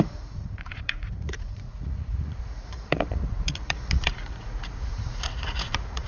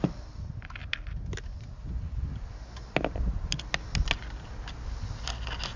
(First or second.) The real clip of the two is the second